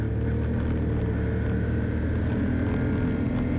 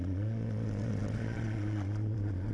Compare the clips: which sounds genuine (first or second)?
first